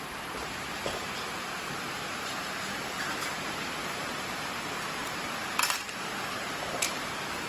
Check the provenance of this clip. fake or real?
fake